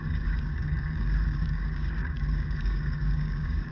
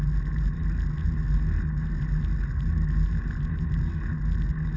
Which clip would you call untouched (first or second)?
second